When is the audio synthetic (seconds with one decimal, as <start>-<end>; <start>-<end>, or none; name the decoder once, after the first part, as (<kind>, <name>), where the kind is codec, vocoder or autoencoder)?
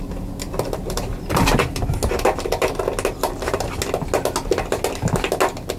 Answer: 1.1-1.9 (vocoder, BigVGAN v2)